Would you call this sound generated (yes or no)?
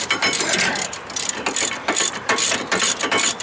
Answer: yes